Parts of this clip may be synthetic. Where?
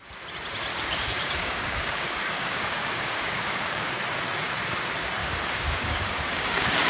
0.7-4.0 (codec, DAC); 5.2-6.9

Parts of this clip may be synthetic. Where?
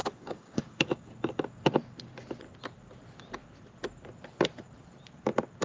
0.0-1.1 (codec, DAC)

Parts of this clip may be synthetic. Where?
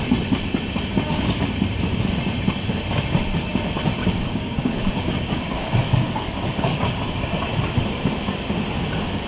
4.0-7.4 (codec, DAC)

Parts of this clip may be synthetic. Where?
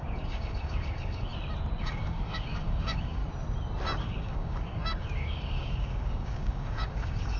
0.0-1.3 (codec, DAC); 1.8-3.2; 4.0-7.4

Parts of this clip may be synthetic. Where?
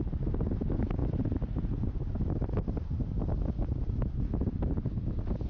none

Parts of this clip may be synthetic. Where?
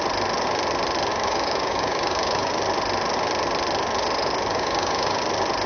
1.1-2.5 (codec, DAC); 4.5-5.2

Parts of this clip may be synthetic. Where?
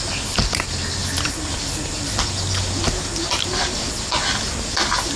none